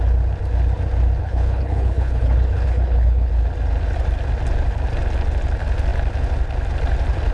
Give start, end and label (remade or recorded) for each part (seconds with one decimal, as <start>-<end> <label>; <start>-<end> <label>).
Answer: 0.0-1.2 recorded; 1.2-3.3 remade; 3.3-7.3 recorded